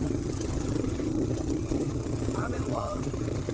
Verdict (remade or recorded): remade